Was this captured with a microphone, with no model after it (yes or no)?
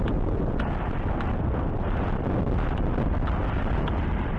yes